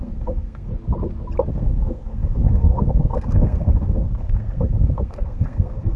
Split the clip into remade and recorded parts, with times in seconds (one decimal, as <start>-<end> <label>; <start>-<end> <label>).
0.0-0.7 remade; 0.7-1.5 recorded; 1.5-6.0 remade

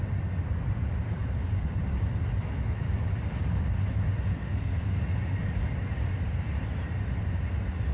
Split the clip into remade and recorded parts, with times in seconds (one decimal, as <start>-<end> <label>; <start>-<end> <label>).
0.0-4.4 recorded; 4.4-5.0 remade; 5.0-7.9 recorded